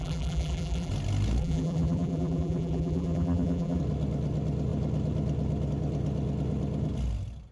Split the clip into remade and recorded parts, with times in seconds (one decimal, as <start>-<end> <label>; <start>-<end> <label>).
0.0-0.9 remade; 0.9-1.4 recorded; 1.4-3.8 remade; 3.8-7.5 recorded

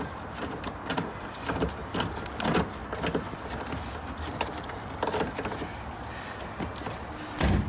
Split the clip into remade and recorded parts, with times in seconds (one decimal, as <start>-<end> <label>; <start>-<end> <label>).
0.0-7.7 recorded

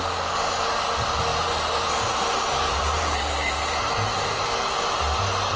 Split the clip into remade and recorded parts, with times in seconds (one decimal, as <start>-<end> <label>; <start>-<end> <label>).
0.0-1.3 recorded; 1.3-4.7 remade; 4.7-5.6 recorded

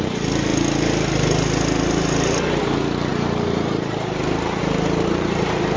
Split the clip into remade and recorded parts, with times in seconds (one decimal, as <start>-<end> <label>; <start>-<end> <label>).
0.0-0.5 remade; 0.5-2.6 recorded; 2.6-5.8 remade

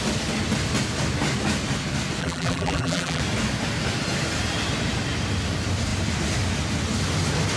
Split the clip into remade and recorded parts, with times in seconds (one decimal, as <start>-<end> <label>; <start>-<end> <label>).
0.0-2.2 recorded; 2.2-3.2 remade; 3.2-7.6 recorded